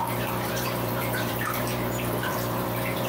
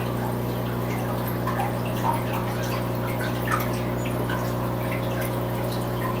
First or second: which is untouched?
second